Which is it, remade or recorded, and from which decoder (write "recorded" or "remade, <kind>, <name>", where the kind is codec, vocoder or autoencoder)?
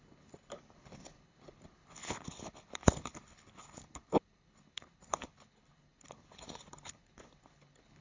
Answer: remade, codec, HILCodec